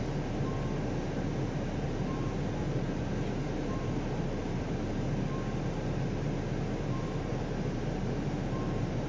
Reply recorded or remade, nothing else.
recorded